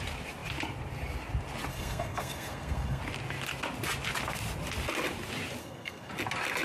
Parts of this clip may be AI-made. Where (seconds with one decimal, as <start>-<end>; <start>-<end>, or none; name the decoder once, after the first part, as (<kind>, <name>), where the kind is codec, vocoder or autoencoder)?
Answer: 1.7-3.0 (codec, SNAC); 5.6-6.1